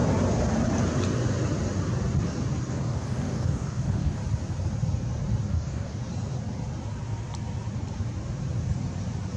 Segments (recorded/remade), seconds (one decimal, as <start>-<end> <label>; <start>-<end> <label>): 0.0-2.7 recorded; 2.7-4.2 remade; 4.2-5.5 recorded; 5.5-6.0 remade; 6.0-9.4 recorded